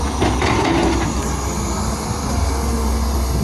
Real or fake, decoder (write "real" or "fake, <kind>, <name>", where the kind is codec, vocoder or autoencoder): real